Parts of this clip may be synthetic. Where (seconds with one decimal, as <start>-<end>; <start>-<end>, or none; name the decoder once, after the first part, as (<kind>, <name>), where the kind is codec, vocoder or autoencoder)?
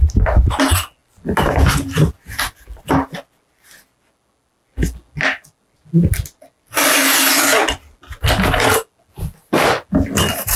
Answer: none